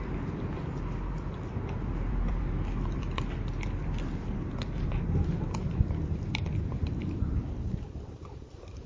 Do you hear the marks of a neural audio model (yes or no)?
yes